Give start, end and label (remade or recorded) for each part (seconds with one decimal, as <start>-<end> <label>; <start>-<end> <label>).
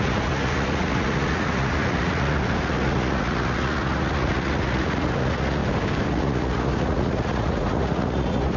0.0-5.6 remade; 5.6-6.1 recorded; 6.1-8.6 remade